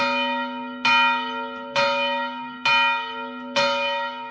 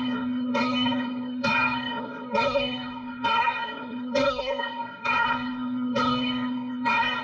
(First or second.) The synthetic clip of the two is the second